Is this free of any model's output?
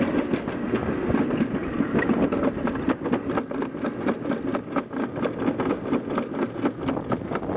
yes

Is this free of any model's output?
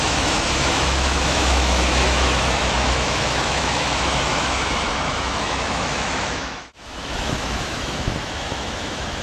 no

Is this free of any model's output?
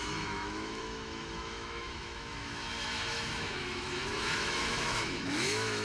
no